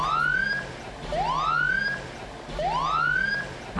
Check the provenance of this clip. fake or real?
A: real